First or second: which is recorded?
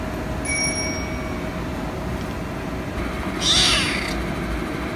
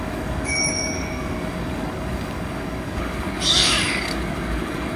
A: first